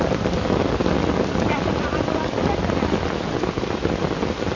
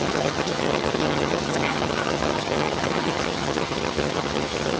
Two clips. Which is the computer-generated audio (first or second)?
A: second